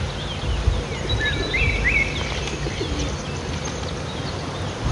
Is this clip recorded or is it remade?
recorded